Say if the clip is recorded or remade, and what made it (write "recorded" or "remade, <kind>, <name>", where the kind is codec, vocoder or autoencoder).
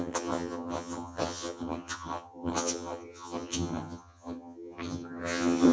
remade, vocoder, HiFi-GAN